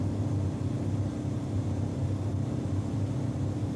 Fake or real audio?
real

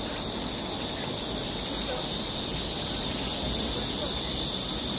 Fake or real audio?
real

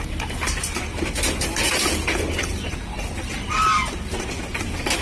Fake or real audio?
real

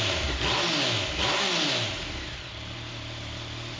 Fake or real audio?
real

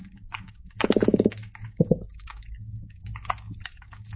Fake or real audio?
fake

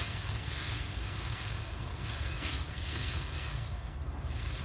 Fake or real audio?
fake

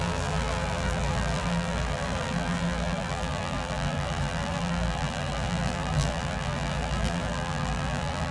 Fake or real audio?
fake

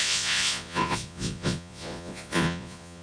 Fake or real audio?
fake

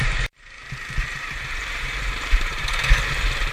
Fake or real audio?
fake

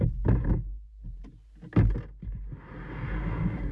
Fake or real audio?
real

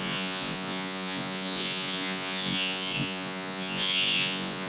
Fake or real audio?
fake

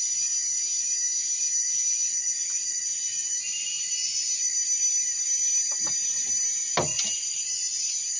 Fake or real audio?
real